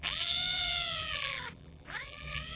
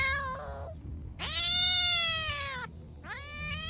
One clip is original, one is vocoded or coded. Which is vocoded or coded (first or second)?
first